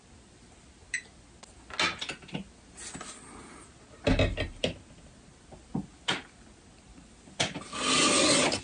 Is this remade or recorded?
recorded